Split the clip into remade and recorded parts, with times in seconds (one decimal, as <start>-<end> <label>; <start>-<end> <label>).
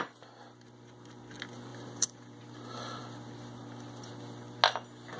0.0-1.7 recorded; 1.7-2.4 remade; 2.4-5.2 recorded